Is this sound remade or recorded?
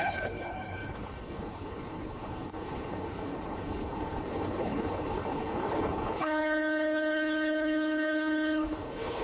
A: remade